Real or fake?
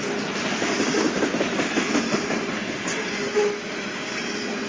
real